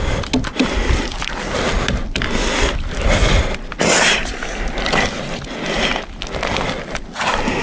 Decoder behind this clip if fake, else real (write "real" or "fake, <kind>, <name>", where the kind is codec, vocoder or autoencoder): real